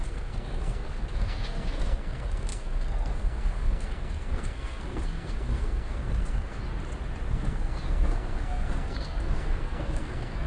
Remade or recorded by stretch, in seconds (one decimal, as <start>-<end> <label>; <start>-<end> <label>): 0.0-6.6 remade; 6.6-7.3 recorded; 7.3-10.5 remade